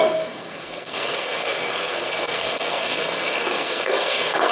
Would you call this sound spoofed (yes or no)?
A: yes